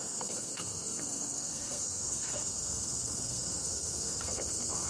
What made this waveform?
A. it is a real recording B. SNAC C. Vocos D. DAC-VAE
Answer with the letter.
B